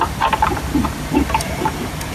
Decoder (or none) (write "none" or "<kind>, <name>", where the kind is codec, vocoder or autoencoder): vocoder, BigVGAN v2